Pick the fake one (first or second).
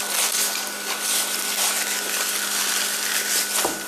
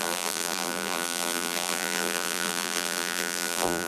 second